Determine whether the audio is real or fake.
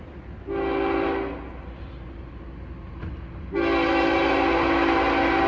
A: real